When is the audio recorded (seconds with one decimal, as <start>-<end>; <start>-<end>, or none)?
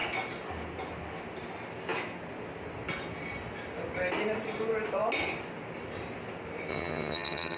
0.0-6.7